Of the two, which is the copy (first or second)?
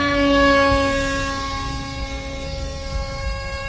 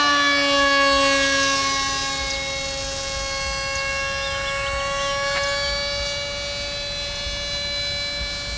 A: first